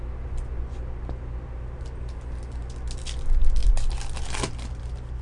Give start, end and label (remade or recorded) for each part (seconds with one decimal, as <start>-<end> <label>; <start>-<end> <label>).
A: 0.0-5.2 recorded